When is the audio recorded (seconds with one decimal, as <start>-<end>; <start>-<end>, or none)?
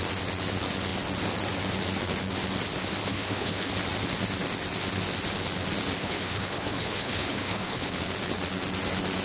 0.0-3.1; 3.7-6.0; 8.0-9.2